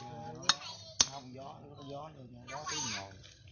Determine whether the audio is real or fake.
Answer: real